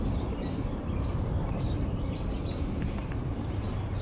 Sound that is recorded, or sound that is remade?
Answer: remade